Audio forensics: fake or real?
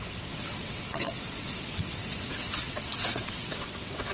fake